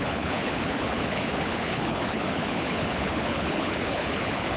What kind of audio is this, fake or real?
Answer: fake